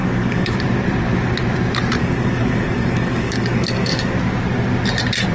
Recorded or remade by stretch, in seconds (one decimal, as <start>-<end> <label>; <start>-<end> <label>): 0.0-0.5 remade; 0.5-2.0 recorded; 2.0-4.1 remade; 4.1-5.3 recorded